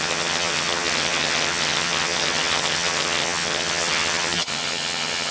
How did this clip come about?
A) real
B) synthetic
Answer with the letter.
B